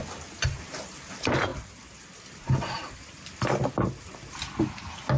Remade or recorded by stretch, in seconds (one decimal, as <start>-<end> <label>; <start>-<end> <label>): 0.0-5.2 recorded